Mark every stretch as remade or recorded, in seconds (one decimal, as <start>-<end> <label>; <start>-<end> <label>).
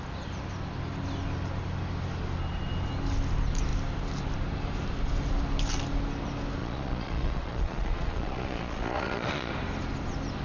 0.0-6.6 recorded; 6.6-9.5 remade; 9.5-10.4 recorded